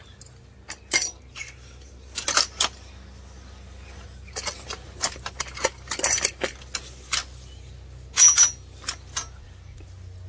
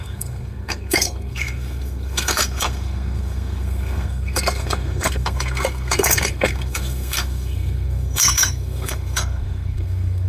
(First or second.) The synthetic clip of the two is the second